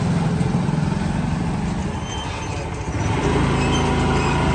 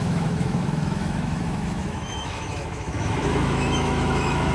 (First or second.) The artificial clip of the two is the second